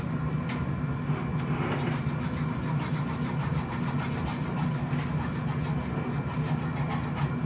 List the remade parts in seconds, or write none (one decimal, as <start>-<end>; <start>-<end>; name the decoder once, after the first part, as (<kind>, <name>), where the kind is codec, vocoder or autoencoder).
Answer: none